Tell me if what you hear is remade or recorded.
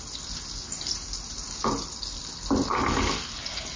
recorded